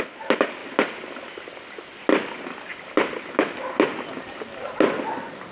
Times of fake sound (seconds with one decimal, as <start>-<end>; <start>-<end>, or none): none